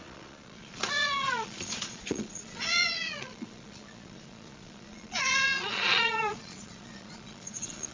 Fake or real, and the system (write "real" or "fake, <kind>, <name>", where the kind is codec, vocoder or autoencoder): fake, vocoder, Vocos